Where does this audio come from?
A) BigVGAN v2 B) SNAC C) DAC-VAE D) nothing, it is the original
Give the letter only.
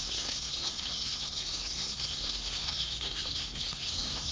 B